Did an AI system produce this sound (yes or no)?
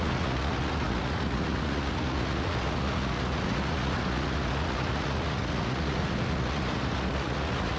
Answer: yes